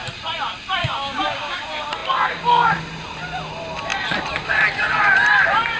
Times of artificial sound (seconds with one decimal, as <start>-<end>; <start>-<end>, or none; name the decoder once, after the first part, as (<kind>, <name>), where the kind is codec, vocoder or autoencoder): 0.8-1.6 (codec, DAC)